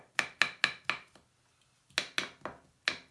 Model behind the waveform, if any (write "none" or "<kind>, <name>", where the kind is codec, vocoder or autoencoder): none